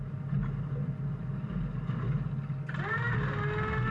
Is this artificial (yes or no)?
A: no